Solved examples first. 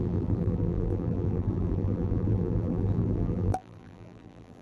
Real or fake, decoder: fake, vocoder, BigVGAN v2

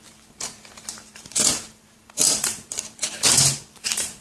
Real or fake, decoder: fake, vocoder, BigVGAN v2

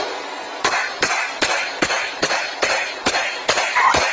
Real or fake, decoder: fake, vocoder, BigVGAN v2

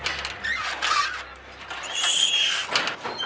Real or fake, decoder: real